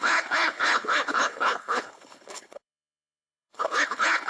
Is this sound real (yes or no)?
no